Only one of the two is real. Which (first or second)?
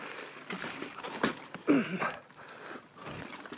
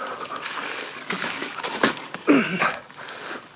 first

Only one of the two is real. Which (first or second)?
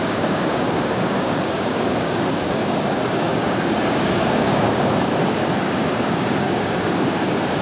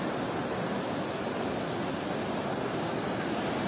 second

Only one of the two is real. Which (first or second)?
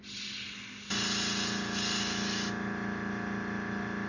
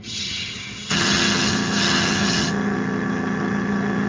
first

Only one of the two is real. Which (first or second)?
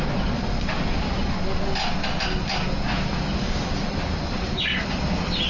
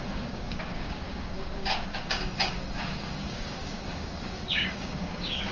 first